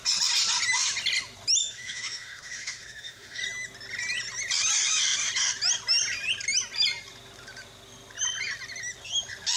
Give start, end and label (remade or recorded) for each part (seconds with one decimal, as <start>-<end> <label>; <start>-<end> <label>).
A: 0.0-1.6 recorded; 1.6-3.4 remade; 3.4-9.6 recorded